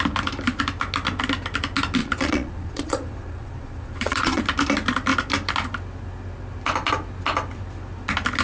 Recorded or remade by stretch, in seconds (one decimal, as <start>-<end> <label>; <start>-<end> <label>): 0.0-2.0 recorded; 2.0-4.4 remade; 4.4-8.4 recorded